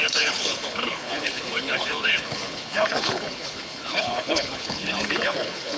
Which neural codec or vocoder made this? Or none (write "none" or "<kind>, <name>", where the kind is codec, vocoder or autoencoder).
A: codec, HILCodec